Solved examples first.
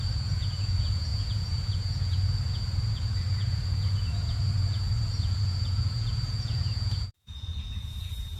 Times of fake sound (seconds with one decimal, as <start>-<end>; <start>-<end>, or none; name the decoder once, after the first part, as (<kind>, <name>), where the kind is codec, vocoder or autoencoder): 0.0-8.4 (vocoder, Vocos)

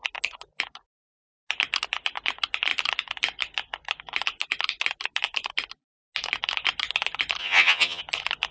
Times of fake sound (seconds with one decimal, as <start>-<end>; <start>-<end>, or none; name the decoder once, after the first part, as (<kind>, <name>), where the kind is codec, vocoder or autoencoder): 7.4-8.0 (vocoder, HiFi-GAN)

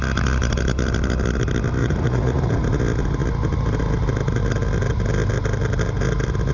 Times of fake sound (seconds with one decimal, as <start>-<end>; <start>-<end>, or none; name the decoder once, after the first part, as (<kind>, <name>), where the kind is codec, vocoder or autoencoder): 1.8-2.5 (vocoder, Vocos)

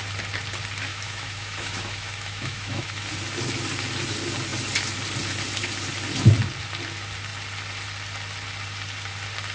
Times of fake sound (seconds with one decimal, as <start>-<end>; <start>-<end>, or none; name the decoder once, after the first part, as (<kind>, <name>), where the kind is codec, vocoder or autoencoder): 0.9-3.0 (autoencoder, DAC-VAE)

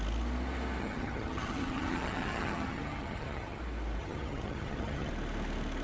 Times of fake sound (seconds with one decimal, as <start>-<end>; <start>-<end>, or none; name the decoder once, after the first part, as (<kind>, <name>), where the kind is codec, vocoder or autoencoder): 0.8-3.6 (vocoder, HiFi-GAN); 4.0-5.1

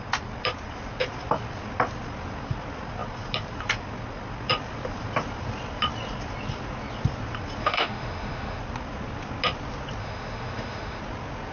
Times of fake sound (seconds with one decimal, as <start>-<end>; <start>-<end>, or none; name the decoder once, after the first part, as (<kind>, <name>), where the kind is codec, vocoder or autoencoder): 7.6-8.6 (autoencoder, DAC-VAE); 10.0-11.0